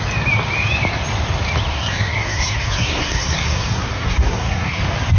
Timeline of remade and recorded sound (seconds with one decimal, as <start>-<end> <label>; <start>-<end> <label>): 0.0-1.7 recorded; 1.7-4.8 remade; 4.8-5.2 recorded